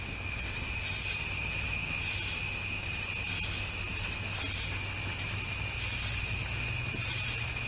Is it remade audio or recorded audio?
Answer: recorded